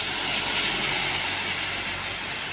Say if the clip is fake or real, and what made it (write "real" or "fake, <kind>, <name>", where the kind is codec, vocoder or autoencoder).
real